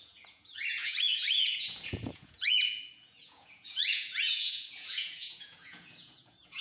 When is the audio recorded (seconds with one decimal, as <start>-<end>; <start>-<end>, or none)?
none